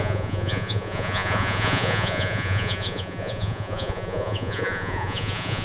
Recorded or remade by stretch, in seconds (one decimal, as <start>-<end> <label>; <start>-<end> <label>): 0.0-5.6 remade